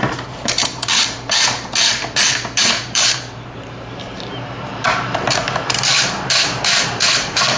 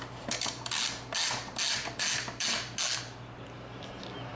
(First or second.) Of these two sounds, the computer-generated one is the first